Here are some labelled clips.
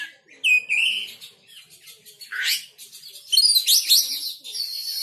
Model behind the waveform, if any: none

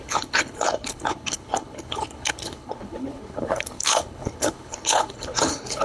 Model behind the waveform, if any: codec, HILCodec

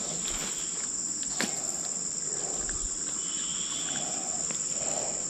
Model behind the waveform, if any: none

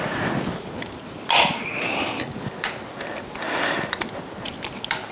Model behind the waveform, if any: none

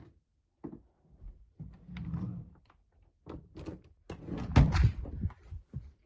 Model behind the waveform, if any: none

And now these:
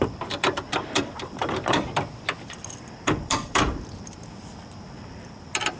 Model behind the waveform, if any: vocoder, BigVGAN v2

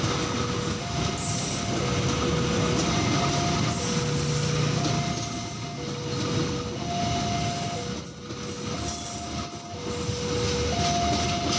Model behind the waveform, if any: none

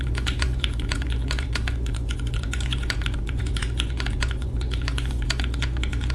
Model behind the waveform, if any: vocoder, Vocos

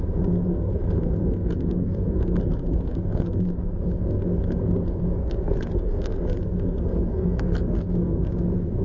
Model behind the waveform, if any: codec, SNAC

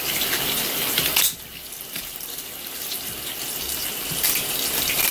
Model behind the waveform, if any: none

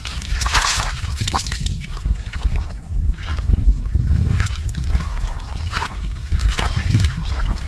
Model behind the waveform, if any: codec, SNAC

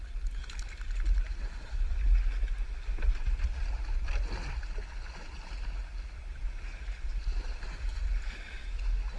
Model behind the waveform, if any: none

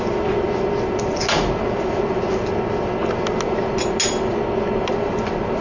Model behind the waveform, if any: none